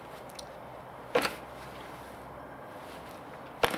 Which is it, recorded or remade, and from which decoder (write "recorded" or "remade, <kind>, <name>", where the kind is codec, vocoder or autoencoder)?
recorded